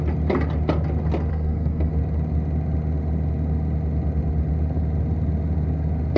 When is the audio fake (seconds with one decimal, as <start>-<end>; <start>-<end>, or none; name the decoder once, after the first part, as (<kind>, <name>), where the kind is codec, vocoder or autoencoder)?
1.3-1.9 (codec, SNAC)